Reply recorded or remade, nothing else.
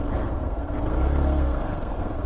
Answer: remade